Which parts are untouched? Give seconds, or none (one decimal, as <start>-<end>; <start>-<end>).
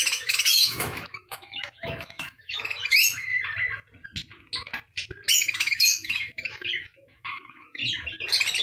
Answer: 3.3-5.3; 7.8-8.6